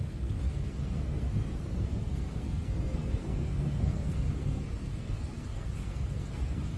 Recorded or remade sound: remade